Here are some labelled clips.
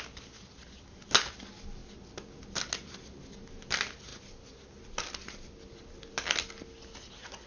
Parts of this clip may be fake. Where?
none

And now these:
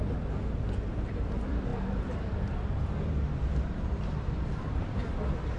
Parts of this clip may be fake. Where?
1.7-5.1 (vocoder, BigVGAN v2)

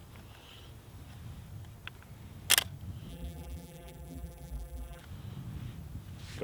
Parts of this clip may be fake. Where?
3.1-5.0 (vocoder, BigVGAN v2)

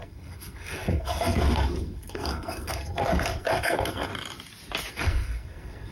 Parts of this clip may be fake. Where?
0.0-4.1 (codec, SNAC); 4.9-5.9